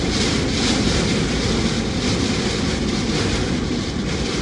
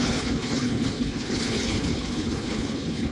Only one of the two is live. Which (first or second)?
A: first